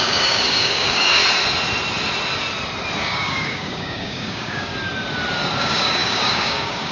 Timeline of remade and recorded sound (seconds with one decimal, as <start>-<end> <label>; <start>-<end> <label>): 0.0-1.2 remade; 1.2-3.0 recorded; 3.0-4.7 remade; 4.7-5.6 recorded; 5.6-6.9 remade